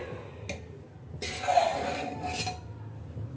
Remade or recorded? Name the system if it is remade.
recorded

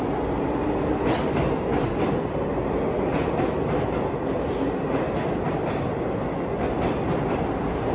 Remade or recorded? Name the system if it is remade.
recorded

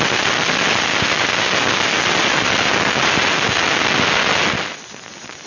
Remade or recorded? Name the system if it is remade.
recorded